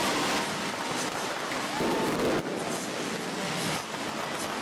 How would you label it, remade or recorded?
recorded